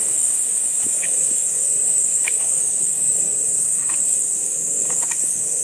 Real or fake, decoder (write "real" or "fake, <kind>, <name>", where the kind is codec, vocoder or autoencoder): fake, codec, DAC